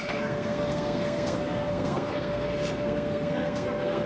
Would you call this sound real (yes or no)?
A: no